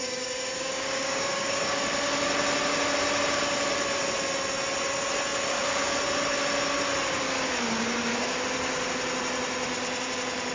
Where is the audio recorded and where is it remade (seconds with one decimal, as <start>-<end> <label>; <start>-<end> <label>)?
0.0-1.8 remade; 1.8-10.5 recorded